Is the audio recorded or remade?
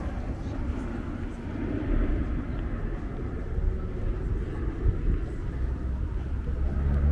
recorded